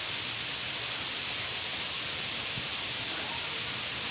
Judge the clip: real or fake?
real